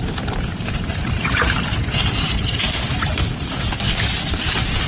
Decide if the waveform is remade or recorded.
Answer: remade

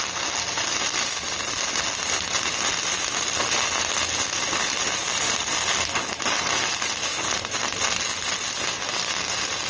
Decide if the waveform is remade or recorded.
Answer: recorded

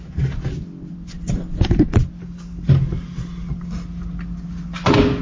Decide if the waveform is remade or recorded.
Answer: recorded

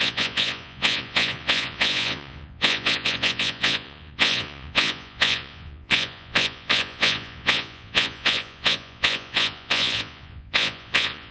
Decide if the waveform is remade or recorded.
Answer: remade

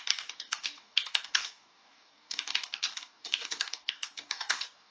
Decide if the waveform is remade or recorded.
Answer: remade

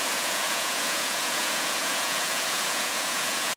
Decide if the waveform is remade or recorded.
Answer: remade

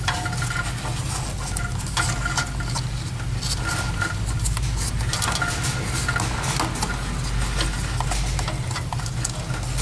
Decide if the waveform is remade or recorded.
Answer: recorded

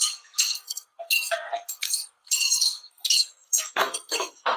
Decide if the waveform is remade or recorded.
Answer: remade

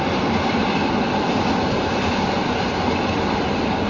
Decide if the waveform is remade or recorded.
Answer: recorded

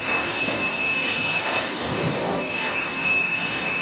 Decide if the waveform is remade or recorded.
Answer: remade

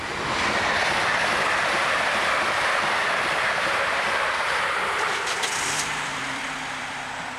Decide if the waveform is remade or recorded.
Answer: remade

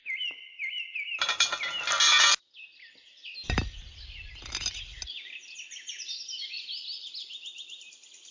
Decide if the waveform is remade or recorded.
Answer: recorded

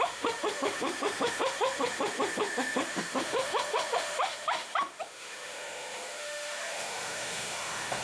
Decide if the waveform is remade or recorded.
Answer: remade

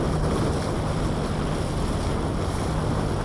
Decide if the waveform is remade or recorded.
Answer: recorded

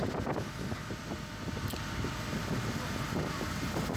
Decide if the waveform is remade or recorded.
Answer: recorded